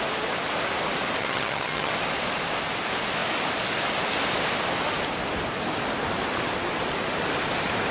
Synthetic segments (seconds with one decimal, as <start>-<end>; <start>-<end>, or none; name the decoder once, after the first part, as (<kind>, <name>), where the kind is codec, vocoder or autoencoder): 1.2-1.9 (vocoder, HiFi-GAN)